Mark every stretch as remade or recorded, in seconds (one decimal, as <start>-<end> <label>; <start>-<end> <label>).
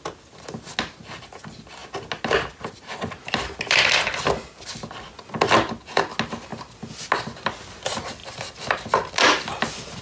0.0-10.0 recorded